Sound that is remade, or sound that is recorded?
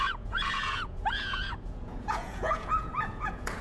remade